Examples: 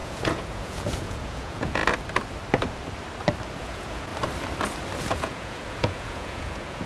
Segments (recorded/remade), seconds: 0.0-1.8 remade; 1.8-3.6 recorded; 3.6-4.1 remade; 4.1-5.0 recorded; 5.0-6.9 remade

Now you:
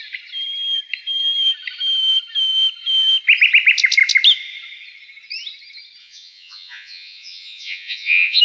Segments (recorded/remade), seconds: 0.0-6.0 recorded; 6.0-8.4 remade

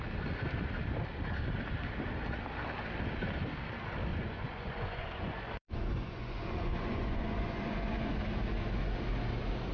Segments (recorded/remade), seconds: 0.0-4.1 recorded; 4.1-8.2 remade; 8.2-9.7 recorded

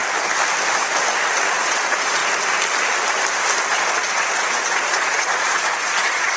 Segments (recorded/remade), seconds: 0.0-1.6 recorded; 1.6-2.2 remade; 2.2-3.7 recorded; 3.7-6.4 remade

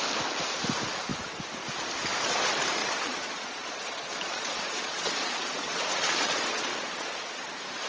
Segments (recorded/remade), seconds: 0.0-2.8 recorded; 2.8-7.5 remade; 7.5-7.9 recorded

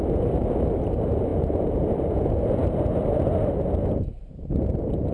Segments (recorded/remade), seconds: 0.0-5.1 recorded

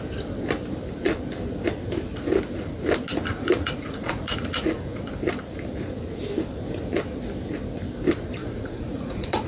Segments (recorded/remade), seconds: 0.0-3.3 recorded; 3.3-5.1 remade; 5.1-8.4 recorded; 8.4-9.5 remade